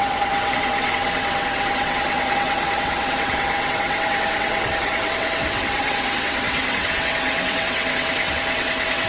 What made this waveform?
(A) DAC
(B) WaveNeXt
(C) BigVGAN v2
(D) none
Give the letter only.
B